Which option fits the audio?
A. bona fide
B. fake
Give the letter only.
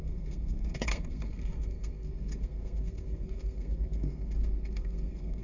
B